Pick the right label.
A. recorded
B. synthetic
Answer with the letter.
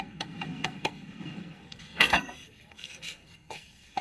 B